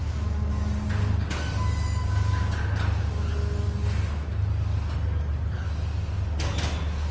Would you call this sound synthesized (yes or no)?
no